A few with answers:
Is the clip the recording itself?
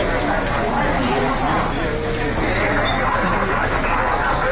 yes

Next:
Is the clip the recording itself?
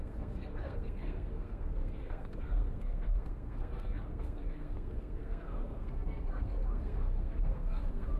no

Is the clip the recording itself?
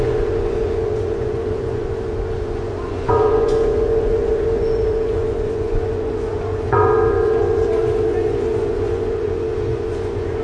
no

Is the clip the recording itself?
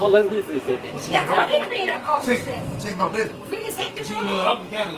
no